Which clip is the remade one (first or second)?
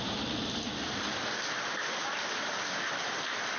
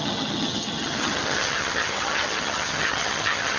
second